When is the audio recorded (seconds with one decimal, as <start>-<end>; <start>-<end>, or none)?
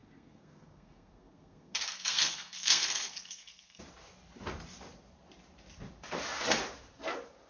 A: 3.8-7.5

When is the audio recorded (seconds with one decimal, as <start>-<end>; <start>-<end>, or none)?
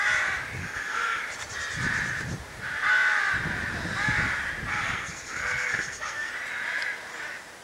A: 0.0-0.6; 1.2-4.7; 6.3-7.6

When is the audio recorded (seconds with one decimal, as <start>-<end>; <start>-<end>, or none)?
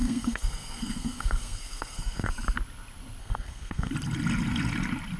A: 2.3-3.2; 3.9-5.2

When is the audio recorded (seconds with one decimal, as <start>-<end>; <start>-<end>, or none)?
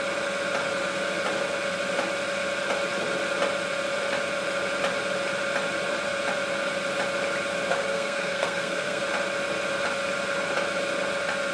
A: 0.0-7.7; 9.0-11.5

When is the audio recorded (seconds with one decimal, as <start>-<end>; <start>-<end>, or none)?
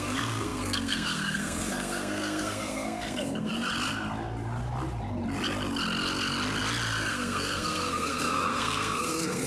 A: 3.5-7.1